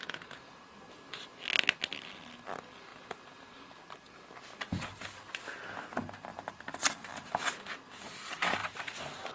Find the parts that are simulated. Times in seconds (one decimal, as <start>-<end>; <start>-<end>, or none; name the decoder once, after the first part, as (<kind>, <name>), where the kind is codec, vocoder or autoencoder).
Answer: 6.3-7.0 (vocoder, BigVGAN v2); 8.6-9.3